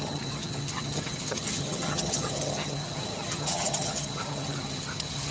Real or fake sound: fake